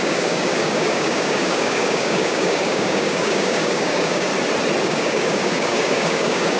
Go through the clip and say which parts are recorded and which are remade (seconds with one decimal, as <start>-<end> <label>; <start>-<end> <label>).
0.0-4.3 remade; 4.3-4.8 recorded; 4.8-6.6 remade